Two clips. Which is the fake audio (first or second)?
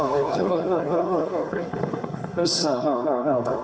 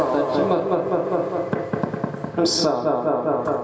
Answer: first